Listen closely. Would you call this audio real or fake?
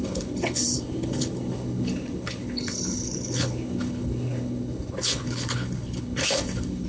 fake